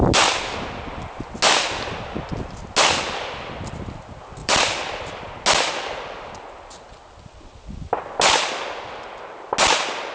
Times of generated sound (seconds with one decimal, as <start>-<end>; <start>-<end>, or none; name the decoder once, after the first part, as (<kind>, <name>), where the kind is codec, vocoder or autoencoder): 4.4-5.2 (vocoder, BigVGAN v2)